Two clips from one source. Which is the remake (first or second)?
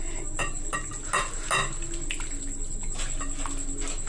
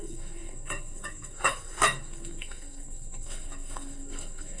second